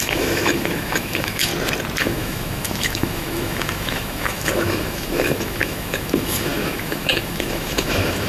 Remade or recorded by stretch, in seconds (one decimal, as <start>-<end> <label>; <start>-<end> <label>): 0.0-1.5 remade; 1.5-2.0 recorded; 2.0-8.3 remade